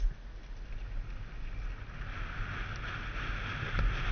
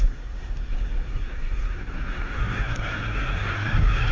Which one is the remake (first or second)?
second